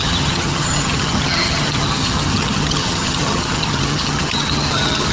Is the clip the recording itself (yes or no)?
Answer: no